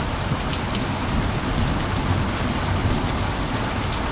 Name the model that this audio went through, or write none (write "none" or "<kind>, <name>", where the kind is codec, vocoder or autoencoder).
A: none